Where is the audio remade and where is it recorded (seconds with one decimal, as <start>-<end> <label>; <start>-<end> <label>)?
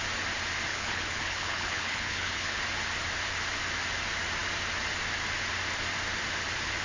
0.0-0.7 recorded; 0.7-2.6 remade; 2.6-6.8 recorded